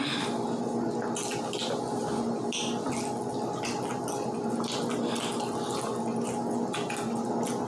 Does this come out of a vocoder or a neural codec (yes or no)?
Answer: no